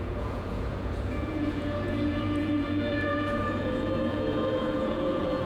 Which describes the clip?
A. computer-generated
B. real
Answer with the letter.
A